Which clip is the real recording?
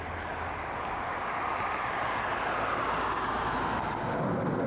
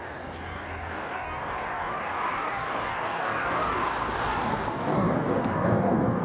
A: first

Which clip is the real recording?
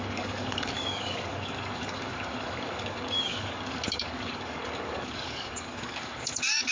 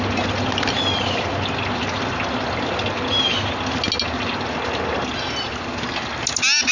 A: second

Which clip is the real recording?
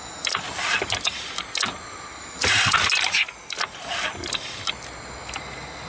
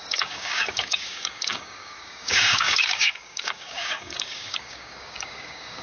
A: first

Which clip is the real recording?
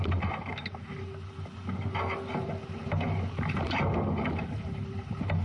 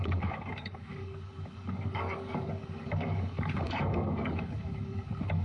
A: first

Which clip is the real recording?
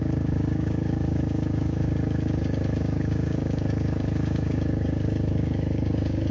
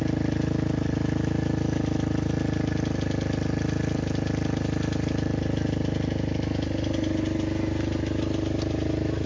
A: second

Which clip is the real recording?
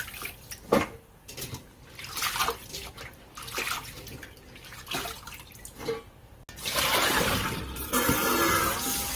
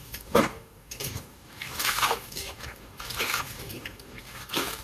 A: first